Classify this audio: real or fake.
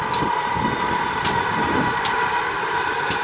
fake